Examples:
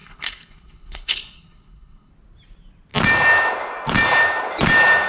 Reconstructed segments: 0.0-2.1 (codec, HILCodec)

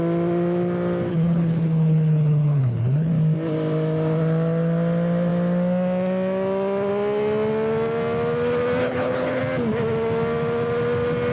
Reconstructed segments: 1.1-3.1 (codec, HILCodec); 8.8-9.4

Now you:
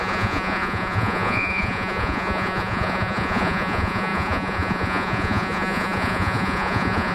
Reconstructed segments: 0.0-7.1 (vocoder, Vocos)

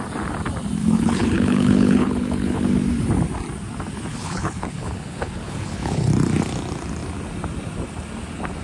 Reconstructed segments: 0.8-2.6 (codec, HILCodec); 4.1-6.1

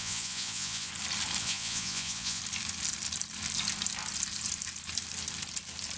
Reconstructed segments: 0.0-0.9 (vocoder, Vocos); 1.4-2.4